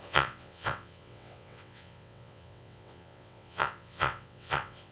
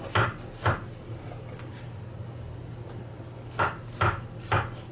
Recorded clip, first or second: second